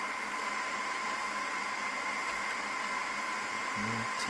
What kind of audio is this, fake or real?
fake